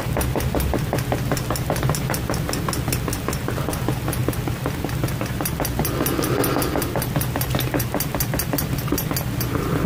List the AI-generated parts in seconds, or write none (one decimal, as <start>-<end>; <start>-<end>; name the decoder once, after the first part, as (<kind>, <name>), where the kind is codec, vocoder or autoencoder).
none